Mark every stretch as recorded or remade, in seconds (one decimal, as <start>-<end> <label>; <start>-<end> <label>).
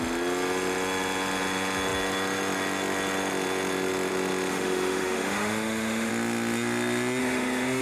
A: 0.0-4.5 recorded; 4.5-6.1 remade; 6.1-7.2 recorded; 7.2-7.8 remade